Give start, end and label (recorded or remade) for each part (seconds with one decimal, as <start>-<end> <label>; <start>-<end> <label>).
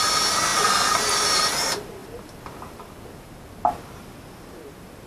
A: 0.0-5.1 recorded